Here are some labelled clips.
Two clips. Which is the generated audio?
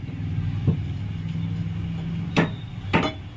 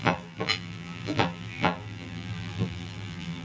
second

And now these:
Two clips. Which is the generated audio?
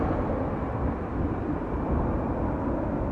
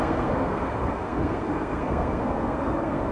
second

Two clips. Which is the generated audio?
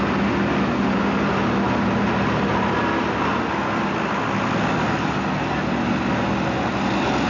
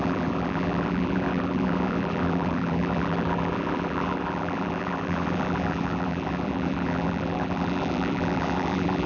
second